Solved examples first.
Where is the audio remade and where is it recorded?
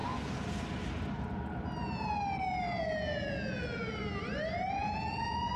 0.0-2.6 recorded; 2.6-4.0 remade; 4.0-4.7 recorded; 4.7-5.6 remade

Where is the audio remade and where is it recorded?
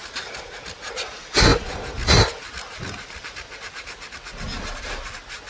0.0-5.5 recorded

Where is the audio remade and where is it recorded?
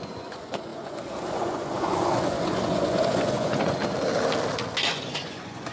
0.0-3.8 remade; 3.8-4.9 recorded; 4.9-5.7 remade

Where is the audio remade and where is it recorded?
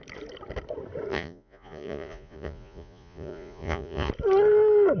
0.0-1.1 recorded; 1.1-4.1 remade; 4.1-5.0 recorded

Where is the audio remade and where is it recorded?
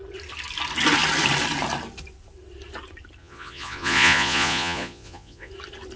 0.0-3.2 recorded; 3.2-5.5 remade; 5.5-6.0 recorded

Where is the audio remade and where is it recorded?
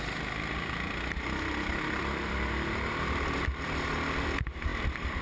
0.0-5.2 recorded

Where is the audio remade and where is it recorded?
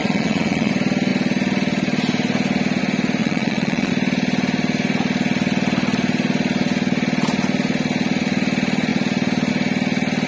0.0-0.7 remade; 0.7-3.2 recorded; 3.2-3.9 remade; 3.9-10.3 recorded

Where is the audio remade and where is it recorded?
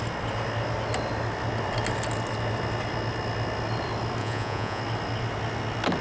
0.0-4.2 recorded; 4.2-4.8 remade; 4.8-6.0 recorded